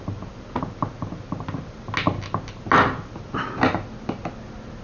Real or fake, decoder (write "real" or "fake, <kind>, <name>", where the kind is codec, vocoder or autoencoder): real